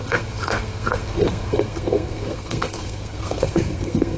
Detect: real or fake fake